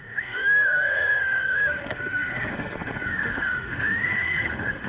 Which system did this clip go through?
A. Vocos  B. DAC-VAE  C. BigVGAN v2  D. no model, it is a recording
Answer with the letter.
B